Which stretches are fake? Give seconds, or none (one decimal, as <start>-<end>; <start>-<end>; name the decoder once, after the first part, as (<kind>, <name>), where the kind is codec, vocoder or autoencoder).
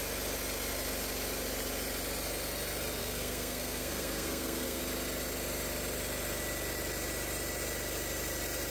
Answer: 3.0-4.8 (codec, SNAC)